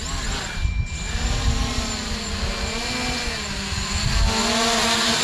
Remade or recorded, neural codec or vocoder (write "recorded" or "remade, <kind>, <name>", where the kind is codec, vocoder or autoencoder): recorded